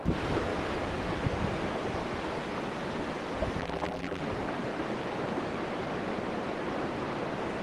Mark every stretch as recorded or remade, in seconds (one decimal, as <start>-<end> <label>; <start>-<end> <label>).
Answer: 0.0-3.6 recorded; 3.6-4.2 remade; 4.2-7.6 recorded